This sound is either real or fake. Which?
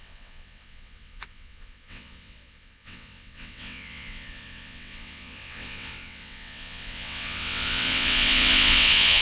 fake